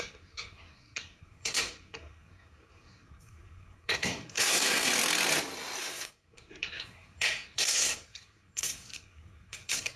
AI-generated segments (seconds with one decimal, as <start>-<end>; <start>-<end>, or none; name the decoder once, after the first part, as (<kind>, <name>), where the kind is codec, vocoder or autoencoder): 0.0-4.9 (codec, SNAC); 5.8-10.0